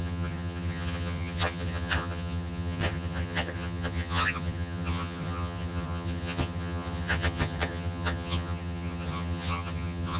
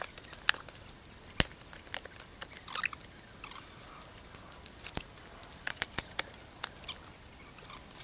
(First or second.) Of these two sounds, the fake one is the first